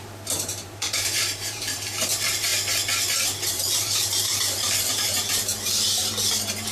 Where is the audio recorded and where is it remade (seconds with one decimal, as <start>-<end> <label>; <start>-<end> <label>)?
0.0-2.5 remade; 2.5-3.5 recorded; 3.5-6.7 remade